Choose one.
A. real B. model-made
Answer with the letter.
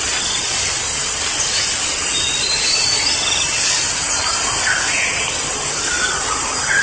A